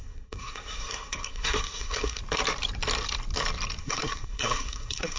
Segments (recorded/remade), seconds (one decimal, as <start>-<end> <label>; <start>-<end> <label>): 0.0-2.2 remade; 2.2-3.8 recorded; 3.8-5.2 remade